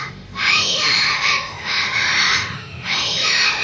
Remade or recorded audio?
remade